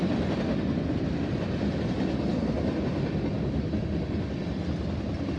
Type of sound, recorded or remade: recorded